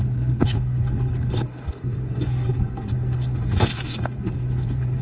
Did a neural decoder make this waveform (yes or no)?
yes